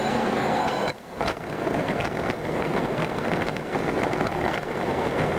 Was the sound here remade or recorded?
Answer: remade